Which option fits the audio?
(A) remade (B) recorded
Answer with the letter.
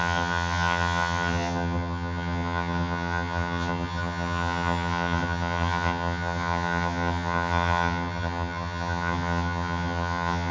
A